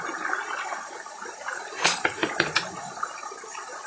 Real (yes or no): yes